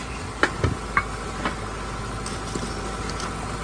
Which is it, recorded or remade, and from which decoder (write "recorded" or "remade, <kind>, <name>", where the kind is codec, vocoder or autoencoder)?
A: recorded